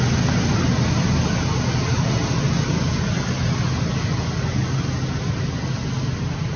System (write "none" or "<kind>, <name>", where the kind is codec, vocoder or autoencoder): none